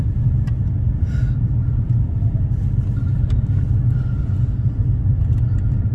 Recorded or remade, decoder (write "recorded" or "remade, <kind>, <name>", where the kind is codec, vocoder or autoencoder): recorded